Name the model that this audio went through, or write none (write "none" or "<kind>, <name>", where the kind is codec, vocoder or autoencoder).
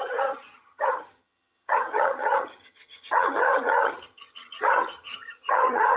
vocoder, HiFi-GAN